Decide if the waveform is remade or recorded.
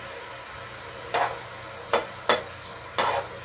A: recorded